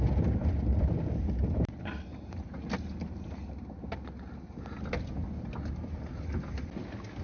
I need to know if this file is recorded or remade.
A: recorded